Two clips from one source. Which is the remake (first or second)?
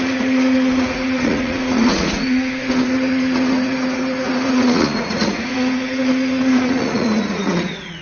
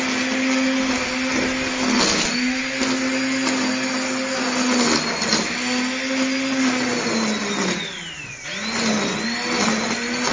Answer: first